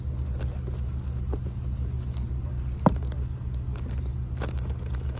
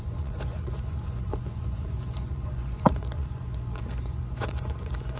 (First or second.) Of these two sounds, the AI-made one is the second